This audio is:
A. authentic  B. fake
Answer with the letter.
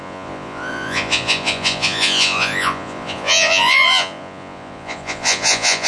B